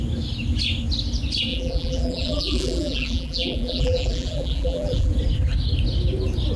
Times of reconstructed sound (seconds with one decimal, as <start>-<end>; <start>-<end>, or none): 1.5-5.1